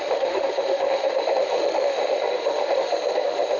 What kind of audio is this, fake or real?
fake